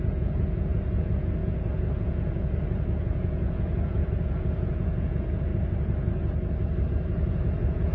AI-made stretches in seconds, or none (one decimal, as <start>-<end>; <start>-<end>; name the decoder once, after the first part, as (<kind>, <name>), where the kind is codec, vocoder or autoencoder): 0.0-5.5 (vocoder, Vocos); 6.9-7.9